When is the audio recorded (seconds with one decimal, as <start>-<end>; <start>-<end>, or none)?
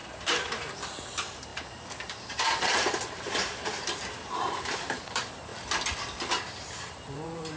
5.5-6.3